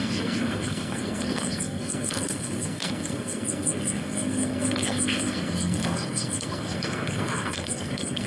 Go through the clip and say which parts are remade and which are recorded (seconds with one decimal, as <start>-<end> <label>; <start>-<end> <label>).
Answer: 0.0-8.3 remade